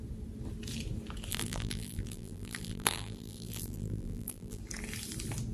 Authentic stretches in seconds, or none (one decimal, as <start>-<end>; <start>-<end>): 0.0-1.3; 4.6-5.5